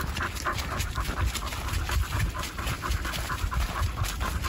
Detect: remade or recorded recorded